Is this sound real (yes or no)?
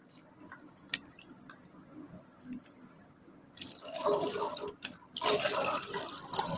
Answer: yes